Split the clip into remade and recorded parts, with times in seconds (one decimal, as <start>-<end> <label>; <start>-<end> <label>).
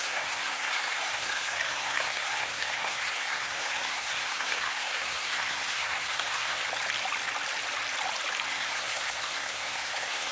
0.0-6.6 remade; 6.6-8.5 recorded; 8.5-10.3 remade